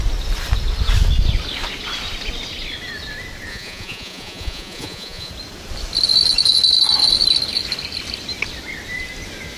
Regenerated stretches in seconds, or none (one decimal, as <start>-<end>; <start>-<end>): 3.5-5.3